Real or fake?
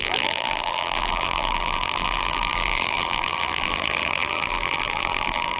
fake